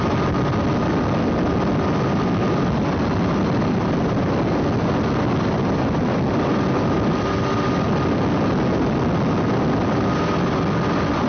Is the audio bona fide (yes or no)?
yes